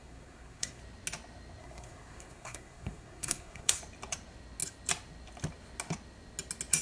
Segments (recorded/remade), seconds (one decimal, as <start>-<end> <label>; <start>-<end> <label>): 0.0-0.8 remade; 0.8-1.6 recorded; 1.6-3.8 remade; 3.8-6.8 recorded